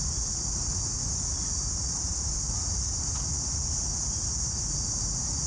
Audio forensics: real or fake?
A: fake